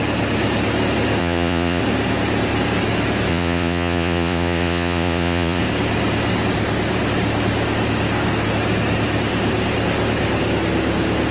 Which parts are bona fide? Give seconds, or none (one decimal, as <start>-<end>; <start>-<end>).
0.0-1.2; 1.8-3.3; 5.6-11.3